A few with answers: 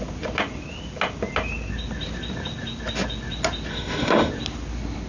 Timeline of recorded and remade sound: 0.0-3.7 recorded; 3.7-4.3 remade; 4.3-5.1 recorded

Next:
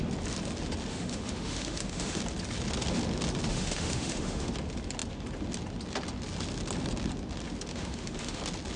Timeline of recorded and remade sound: 0.0-0.9 recorded; 0.9-2.2 remade; 2.2-3.5 recorded; 3.5-4.5 remade; 4.5-7.7 recorded; 7.7-8.4 remade; 8.4-8.8 recorded

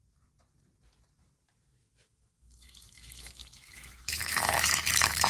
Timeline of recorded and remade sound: 0.0-1.8 recorded; 1.8-5.3 remade

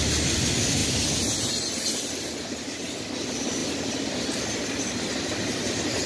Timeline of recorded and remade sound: 0.0-6.1 recorded